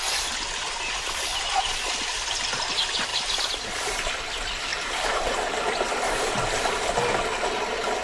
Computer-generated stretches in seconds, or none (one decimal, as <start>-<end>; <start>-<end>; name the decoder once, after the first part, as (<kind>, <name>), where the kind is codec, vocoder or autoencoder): 1.3-2.6 (vocoder, BigVGAN v2); 3.1-4.2; 4.7-6.7